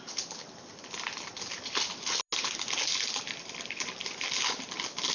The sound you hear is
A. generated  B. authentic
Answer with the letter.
B